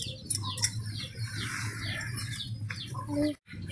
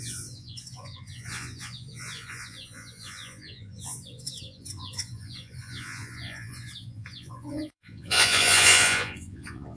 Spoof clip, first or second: second